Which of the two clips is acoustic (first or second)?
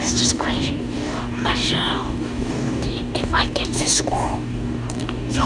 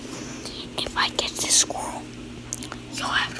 second